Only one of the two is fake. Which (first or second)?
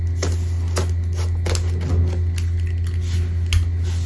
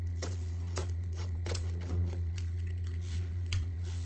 second